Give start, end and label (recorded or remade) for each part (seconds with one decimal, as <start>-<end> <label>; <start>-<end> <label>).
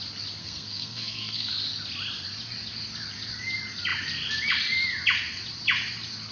0.0-0.4 recorded; 0.4-1.5 remade; 1.5-6.3 recorded